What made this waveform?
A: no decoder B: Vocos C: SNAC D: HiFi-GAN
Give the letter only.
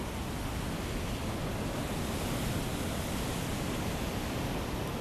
A